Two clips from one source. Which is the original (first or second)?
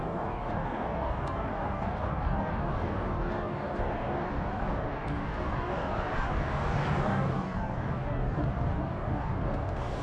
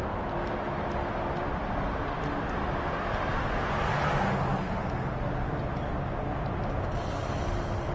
second